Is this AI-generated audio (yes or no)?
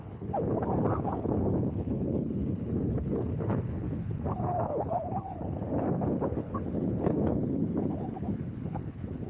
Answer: yes